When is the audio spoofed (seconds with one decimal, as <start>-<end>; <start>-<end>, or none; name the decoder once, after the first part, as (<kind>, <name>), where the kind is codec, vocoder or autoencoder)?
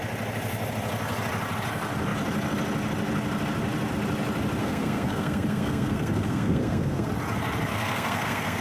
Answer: 4.6-7.1 (codec, SNAC); 7.7-8.6